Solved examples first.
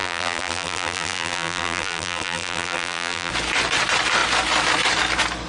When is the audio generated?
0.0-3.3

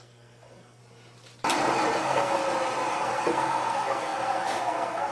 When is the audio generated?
0.0-0.8; 2.0-2.4; 2.9-5.1

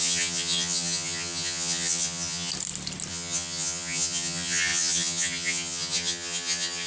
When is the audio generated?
0.0-2.5; 3.1-6.9

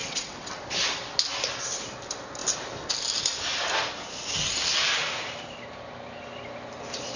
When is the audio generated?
0.0-0.5

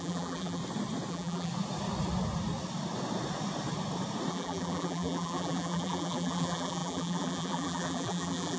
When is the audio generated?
0.0-0.6; 1.1-1.5; 4.3-8.6

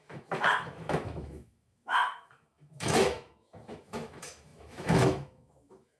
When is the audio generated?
0.0-6.0

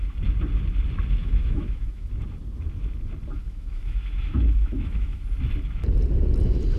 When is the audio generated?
1.2-2.1; 3.4-5.2